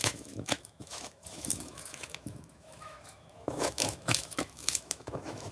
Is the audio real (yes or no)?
no